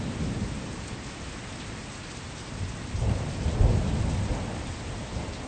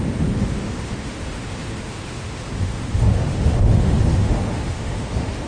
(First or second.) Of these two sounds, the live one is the first